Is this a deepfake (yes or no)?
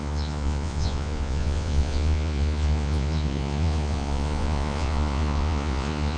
yes